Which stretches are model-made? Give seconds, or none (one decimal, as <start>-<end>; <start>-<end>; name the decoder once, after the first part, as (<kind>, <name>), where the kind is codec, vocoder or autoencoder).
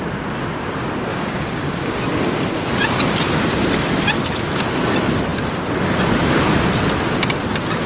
1.1-2.0 (codec, DAC)